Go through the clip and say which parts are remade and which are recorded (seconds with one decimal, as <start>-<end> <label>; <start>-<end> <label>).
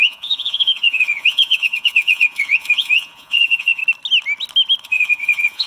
0.0-3.8 remade; 3.8-4.8 recorded; 4.8-5.7 remade